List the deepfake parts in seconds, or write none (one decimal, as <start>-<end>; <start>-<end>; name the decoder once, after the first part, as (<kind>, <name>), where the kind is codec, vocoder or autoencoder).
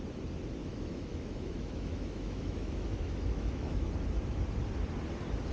0.6-3.9 (autoencoder, DAC-VAE)